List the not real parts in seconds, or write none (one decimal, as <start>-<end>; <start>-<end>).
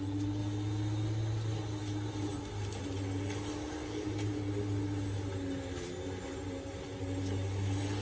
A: none